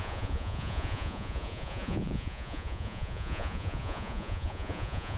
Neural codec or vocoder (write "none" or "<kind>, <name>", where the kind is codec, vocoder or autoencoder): vocoder, Vocos